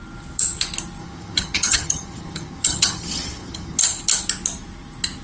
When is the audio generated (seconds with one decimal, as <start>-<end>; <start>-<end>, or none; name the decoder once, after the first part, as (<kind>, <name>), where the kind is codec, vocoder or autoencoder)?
1.0-3.8 (vocoder, HiFi-GAN)